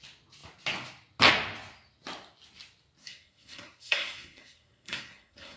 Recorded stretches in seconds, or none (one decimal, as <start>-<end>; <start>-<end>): 0.0-3.0